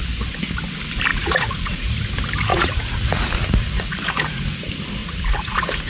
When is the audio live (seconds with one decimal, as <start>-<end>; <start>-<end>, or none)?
0.0-1.1; 1.9-2.5; 4.4-5.0